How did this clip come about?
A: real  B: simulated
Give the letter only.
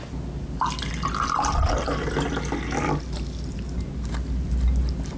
A